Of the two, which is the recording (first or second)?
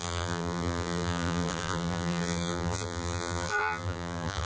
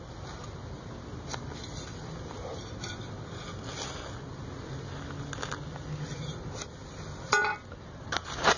second